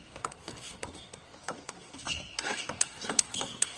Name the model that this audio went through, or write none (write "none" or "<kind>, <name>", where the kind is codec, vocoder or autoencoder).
codec, SNAC